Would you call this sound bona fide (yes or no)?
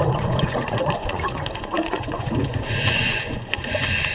no